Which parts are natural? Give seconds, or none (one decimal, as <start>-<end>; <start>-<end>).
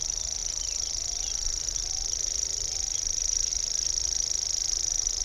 0.0-5.2